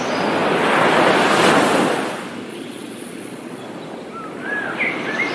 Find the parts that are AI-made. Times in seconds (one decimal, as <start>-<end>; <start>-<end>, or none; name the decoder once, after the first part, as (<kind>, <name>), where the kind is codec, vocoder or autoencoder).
2.5-3.6 (vocoder, Vocos)